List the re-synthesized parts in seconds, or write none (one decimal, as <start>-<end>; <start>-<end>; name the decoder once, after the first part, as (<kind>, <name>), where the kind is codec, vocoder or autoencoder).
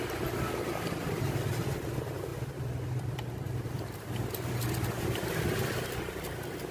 0.0-2.3 (vocoder, BigVGAN v2); 3.0-6.7